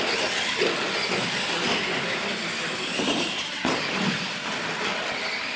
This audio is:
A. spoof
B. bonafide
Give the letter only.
B